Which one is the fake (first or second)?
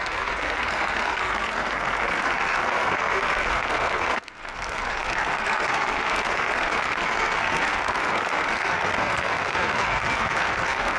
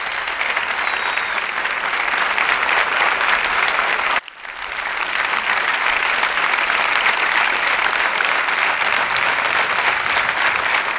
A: first